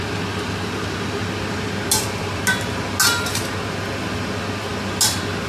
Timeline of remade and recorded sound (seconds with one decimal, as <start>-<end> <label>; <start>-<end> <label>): 0.0-5.5 recorded